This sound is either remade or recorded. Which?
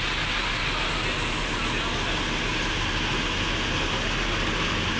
recorded